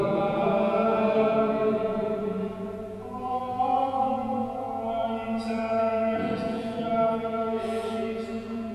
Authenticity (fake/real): fake